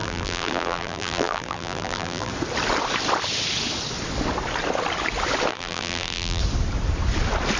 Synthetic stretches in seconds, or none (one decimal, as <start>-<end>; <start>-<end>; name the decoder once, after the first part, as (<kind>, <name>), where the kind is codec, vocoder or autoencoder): 0.0-2.3 (vocoder, BigVGAN v2); 5.5-6.4